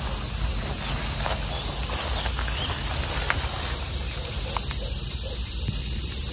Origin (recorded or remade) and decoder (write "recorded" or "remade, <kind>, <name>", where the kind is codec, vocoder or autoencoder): recorded